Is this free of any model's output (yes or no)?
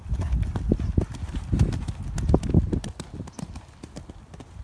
yes